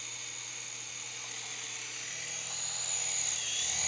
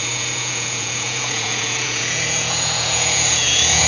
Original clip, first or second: first